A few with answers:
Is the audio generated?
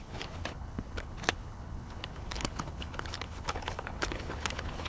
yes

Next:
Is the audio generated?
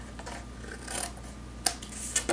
no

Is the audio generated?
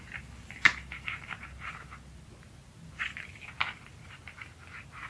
no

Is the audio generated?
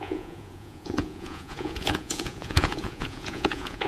yes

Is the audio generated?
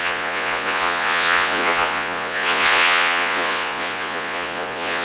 yes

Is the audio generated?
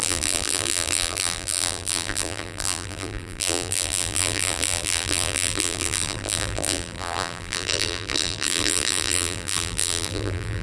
yes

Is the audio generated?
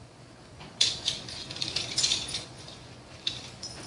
yes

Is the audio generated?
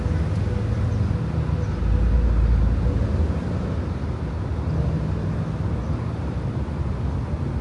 no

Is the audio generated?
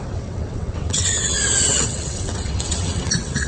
yes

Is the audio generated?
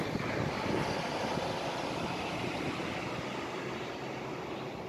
no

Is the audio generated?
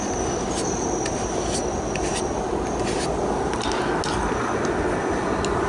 no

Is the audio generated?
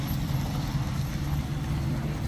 no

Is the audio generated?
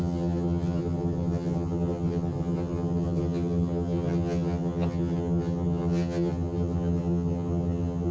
yes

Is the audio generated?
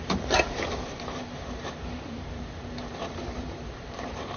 yes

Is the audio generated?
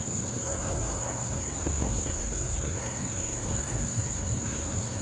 yes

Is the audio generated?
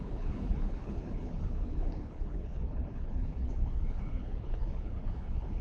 yes